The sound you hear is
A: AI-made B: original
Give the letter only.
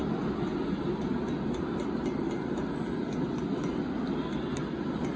B